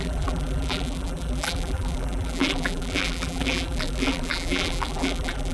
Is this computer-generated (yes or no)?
yes